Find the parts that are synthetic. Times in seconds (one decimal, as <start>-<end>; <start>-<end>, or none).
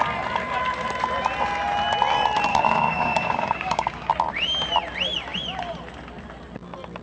2.5-4.1